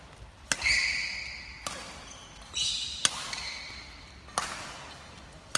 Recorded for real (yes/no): yes